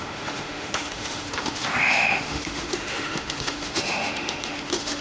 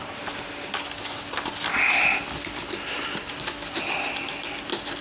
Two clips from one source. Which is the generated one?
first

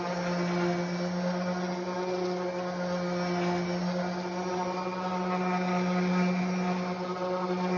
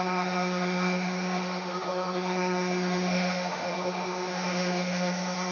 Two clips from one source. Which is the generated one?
second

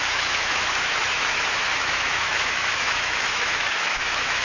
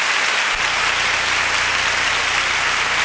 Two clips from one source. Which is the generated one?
first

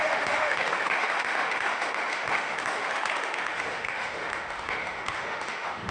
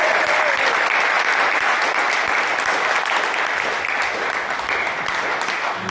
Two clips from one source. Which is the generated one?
first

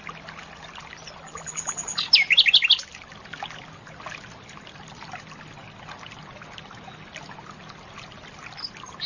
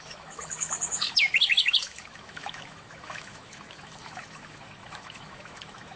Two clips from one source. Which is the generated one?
second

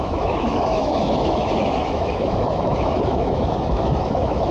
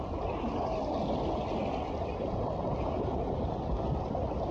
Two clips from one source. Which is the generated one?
first